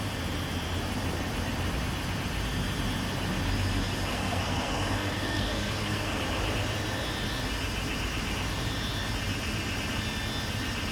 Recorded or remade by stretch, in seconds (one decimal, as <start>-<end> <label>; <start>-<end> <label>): 0.0-4.1 recorded; 4.1-6.2 remade; 6.2-10.9 recorded